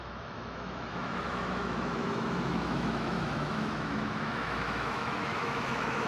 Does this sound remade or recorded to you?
remade